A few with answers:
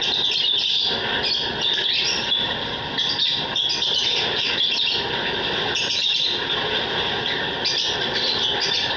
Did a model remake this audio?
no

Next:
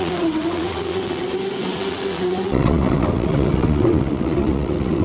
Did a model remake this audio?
yes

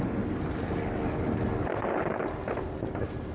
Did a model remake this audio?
no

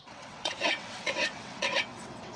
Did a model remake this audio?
yes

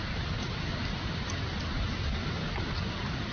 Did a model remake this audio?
no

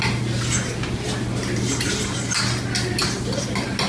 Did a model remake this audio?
no